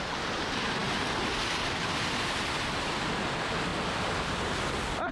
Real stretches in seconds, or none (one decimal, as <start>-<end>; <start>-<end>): 0.0-5.1